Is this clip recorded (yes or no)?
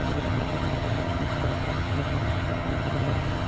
no